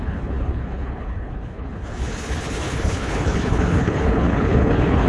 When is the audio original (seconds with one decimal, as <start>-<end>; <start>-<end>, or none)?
none